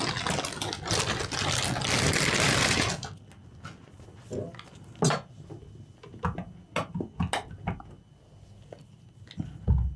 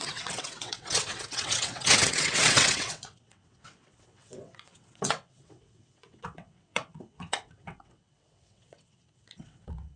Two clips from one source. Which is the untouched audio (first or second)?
first